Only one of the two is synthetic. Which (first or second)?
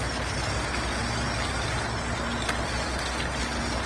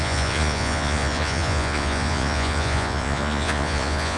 second